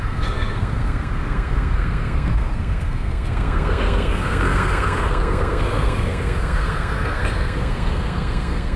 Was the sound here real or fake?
fake